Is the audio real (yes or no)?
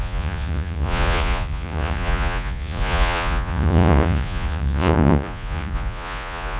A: no